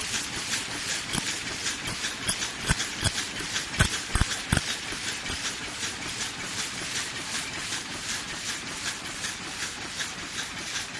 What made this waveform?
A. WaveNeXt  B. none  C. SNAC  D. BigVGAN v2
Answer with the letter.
D